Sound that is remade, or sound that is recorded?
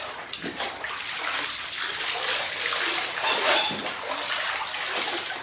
recorded